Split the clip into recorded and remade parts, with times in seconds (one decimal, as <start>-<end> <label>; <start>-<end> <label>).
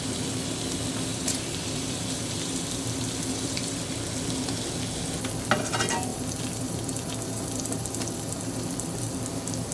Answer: 0.0-1.1 recorded; 1.1-3.8 remade; 3.8-6.1 recorded; 6.1-9.2 remade; 9.2-9.7 recorded